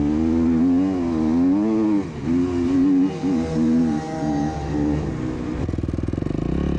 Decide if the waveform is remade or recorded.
recorded